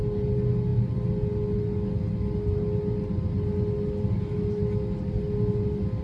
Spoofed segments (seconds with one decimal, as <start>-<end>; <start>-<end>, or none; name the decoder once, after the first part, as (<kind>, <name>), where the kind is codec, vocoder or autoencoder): none